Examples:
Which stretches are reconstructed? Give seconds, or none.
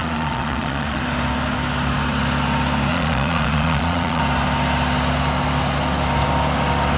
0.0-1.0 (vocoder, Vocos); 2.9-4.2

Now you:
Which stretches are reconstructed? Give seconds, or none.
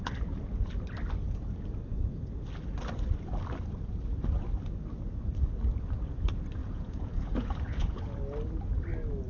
6.6-8.2 (vocoder, Vocos)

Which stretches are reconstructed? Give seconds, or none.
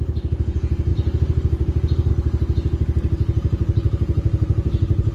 none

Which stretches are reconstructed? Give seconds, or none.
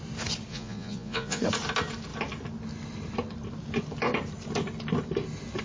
0.5-1.4 (vocoder, Vocos)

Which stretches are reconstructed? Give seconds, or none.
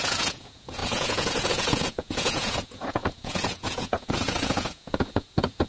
0.0-5.7 (vocoder, Vocos)